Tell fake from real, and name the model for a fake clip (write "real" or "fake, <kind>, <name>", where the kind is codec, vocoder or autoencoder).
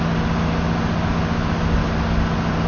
real